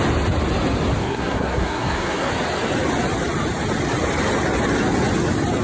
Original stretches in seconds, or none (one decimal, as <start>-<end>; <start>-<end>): 0.0-1.0; 2.3-5.6